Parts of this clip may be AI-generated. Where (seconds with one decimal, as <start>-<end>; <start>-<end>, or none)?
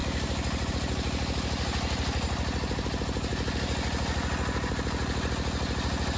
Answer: none